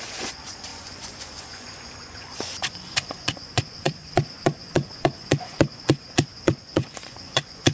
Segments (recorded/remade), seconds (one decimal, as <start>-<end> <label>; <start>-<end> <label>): 0.0-7.7 remade